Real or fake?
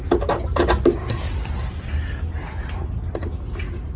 real